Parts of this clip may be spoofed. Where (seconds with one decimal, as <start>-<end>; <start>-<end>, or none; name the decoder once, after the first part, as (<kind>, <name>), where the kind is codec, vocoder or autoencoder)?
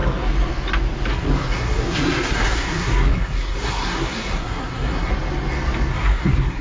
1.1-5.1 (codec, SNAC); 5.9-6.6